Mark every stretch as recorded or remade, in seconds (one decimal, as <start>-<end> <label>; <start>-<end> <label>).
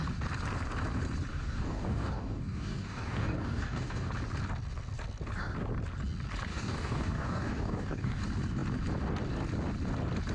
0.0-1.3 recorded; 1.3-4.1 remade; 4.1-6.5 recorded; 6.5-8.2 remade; 8.2-10.3 recorded